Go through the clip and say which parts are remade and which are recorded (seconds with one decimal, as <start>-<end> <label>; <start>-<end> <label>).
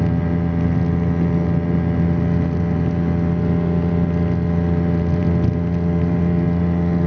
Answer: 0.0-7.1 recorded